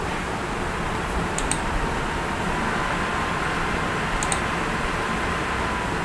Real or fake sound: real